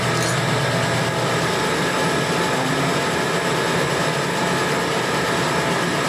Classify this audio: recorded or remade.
recorded